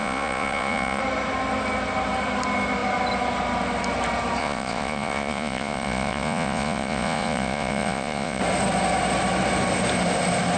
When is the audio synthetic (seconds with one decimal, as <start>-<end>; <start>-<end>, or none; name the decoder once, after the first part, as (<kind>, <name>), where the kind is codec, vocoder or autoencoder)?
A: 0.0-1.0 (vocoder, Vocos); 4.4-8.4